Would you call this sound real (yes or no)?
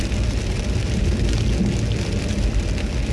yes